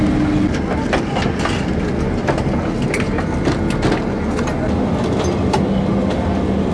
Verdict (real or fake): real